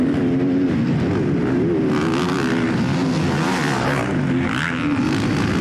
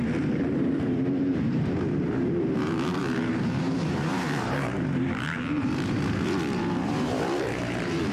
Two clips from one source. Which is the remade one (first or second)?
second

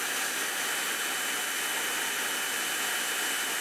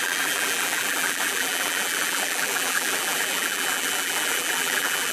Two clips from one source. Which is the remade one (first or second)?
second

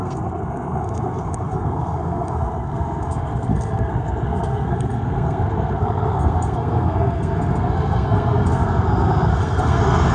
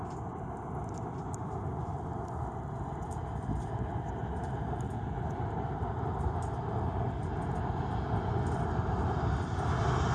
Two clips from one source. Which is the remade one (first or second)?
first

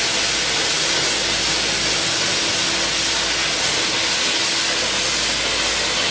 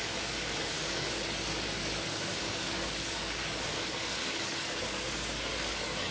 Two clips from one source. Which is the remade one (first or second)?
second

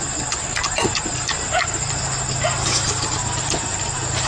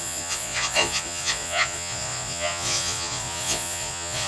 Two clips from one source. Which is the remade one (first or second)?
second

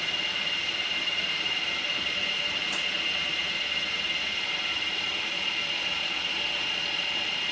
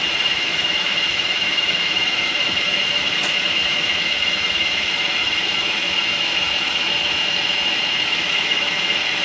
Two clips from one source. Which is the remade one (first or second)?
second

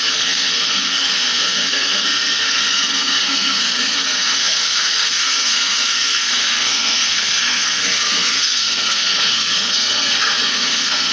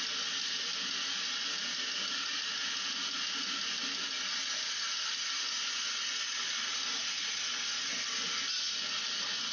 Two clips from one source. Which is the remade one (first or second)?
first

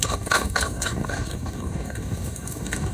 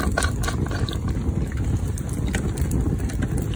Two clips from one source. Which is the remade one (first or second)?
first